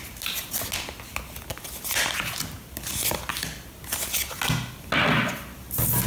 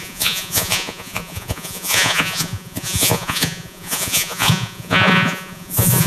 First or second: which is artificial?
second